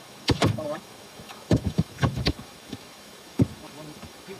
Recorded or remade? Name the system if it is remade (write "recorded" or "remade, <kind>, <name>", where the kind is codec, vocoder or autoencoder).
remade, autoencoder, DAC-VAE